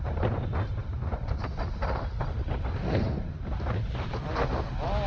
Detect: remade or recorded recorded